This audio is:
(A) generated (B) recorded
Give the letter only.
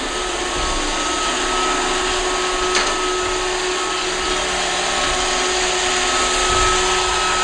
B